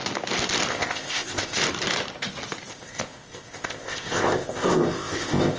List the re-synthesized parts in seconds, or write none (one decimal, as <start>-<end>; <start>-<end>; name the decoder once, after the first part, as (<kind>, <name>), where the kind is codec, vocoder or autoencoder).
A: 0.7-1.6 (codec, ZipCodec); 2.7-5.6